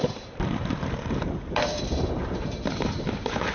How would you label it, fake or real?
fake